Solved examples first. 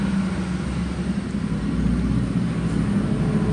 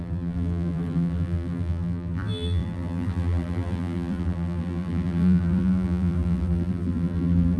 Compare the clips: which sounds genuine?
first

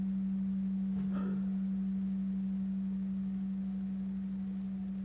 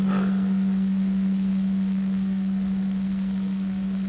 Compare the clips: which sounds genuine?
first